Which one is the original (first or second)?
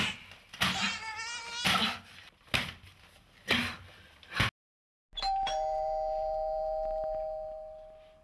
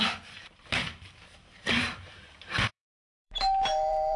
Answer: first